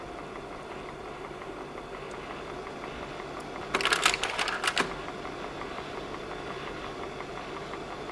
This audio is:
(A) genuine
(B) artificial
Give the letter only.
A